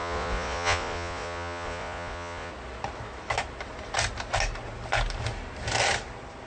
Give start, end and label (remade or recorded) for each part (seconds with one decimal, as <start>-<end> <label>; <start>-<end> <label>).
0.0-2.5 remade; 2.5-6.5 recorded